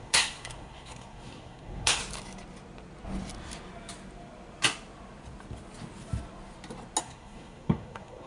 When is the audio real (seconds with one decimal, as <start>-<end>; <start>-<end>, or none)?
2.0-7.0